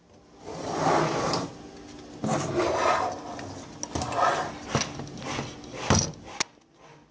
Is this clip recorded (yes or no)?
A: yes